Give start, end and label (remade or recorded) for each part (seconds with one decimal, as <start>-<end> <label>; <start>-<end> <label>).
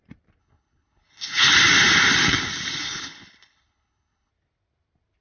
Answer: 0.0-0.4 recorded; 0.4-1.6 remade; 1.6-2.8 recorded; 2.8-4.3 remade; 4.3-5.2 recorded